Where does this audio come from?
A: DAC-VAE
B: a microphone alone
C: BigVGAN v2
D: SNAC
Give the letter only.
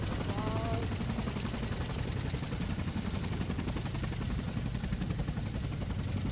B